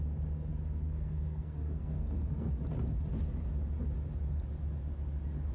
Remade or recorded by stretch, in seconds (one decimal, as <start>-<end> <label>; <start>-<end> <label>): 0.0-0.5 recorded; 0.5-2.5 remade; 2.5-5.5 recorded